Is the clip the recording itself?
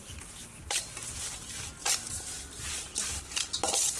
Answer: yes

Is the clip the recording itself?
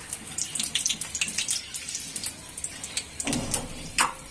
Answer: no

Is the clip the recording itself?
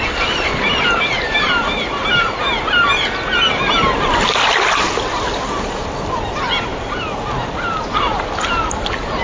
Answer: yes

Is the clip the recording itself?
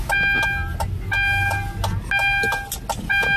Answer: yes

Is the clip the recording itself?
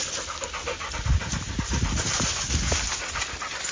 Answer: yes